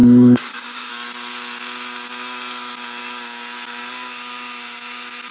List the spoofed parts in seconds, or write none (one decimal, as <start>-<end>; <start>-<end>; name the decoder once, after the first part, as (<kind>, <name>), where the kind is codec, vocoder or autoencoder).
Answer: 0.0-0.9 (autoencoder, DAC-VAE)